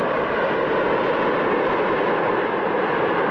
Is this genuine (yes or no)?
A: yes